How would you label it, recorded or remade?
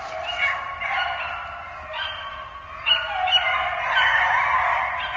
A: recorded